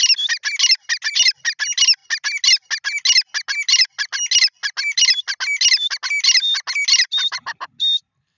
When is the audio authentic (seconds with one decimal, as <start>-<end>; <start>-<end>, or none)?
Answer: 0.0-8.4